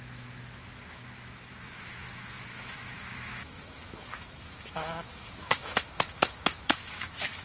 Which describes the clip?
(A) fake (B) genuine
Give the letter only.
A